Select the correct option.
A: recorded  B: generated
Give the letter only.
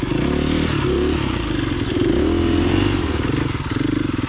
A